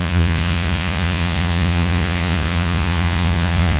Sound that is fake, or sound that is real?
fake